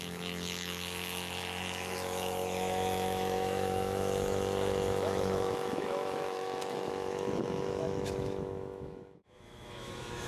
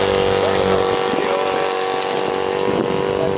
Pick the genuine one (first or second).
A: second